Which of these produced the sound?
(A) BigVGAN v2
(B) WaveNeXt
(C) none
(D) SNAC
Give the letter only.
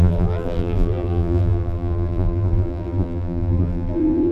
A